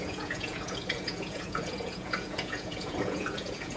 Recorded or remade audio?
remade